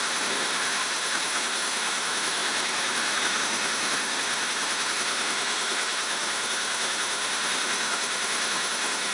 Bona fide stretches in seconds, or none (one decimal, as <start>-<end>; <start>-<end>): none